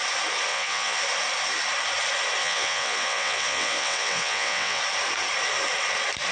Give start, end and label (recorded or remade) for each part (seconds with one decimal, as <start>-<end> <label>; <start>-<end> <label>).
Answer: 0.0-0.5 recorded; 0.5-1.0 remade; 1.0-2.4 recorded; 2.4-4.8 remade; 4.8-6.3 recorded